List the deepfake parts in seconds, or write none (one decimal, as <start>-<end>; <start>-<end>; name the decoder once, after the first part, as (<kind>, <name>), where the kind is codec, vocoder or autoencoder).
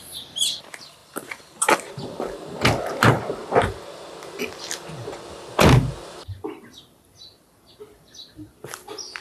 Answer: none